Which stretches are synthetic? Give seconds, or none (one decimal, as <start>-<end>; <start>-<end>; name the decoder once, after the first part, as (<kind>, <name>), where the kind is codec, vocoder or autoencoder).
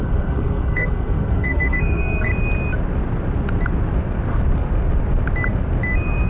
0.0-2.3 (codec, SNAC)